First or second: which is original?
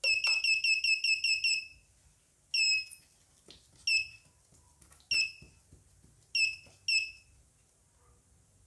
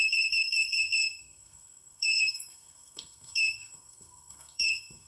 first